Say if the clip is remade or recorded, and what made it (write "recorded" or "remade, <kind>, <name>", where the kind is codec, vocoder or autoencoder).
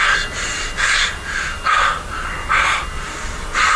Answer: recorded